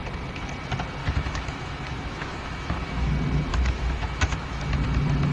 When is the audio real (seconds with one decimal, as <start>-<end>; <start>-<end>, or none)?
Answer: 0.0-1.0; 3.1-3.5; 4.6-5.3